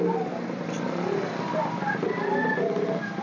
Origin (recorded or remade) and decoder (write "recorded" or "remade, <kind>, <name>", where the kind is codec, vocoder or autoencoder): recorded